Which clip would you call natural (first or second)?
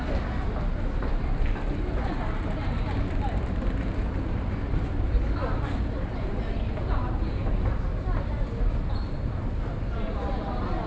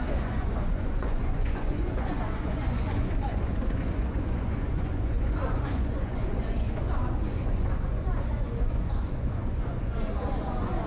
first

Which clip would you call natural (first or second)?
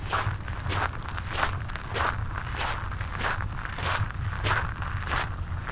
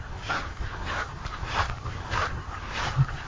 first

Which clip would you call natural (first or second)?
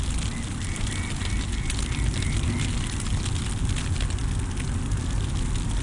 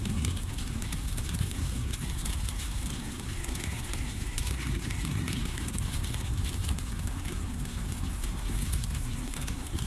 first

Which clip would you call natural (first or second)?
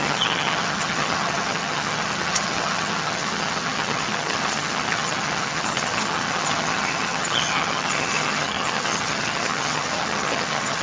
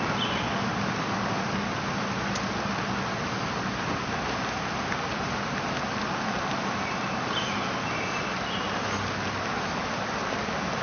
second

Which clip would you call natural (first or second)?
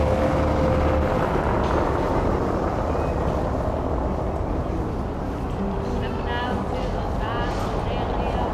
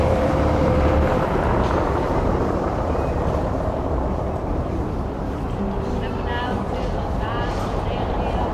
first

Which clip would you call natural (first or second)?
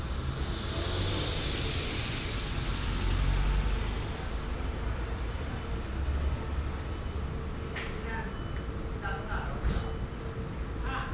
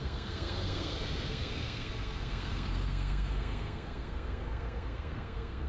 first